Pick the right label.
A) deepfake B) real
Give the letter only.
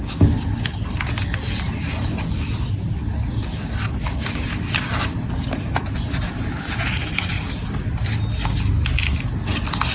B